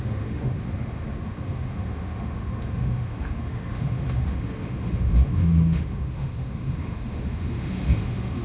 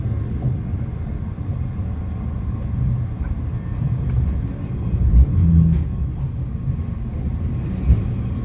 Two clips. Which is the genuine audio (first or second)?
second